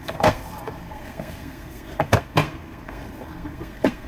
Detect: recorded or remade remade